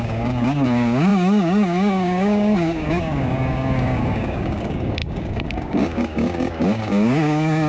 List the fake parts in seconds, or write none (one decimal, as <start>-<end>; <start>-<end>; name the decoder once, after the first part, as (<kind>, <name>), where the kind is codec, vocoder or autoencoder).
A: 0.0-7.7 (codec, DAC)